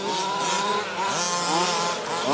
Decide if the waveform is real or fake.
real